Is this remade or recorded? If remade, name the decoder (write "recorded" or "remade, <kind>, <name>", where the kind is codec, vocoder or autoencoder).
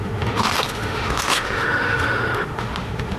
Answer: remade, autoencoder, DAC-VAE